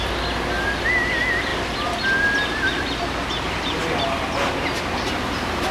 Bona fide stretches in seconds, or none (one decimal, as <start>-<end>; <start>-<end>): 0.0-5.7